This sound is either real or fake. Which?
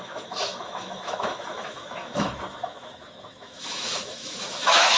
fake